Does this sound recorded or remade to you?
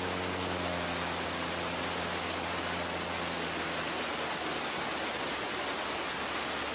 recorded